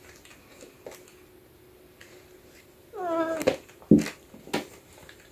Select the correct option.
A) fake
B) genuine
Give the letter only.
B